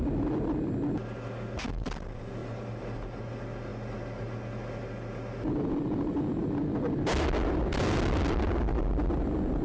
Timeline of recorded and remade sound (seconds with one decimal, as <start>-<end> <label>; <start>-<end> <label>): 0.0-9.6 recorded